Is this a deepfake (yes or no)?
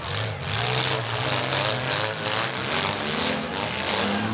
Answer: no